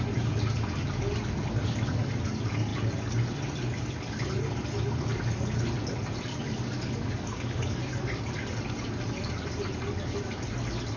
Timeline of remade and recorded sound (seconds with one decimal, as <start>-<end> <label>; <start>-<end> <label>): 0.0-1.5 recorded; 1.5-2.1 remade; 2.1-6.3 recorded; 6.3-8.2 remade; 8.2-11.0 recorded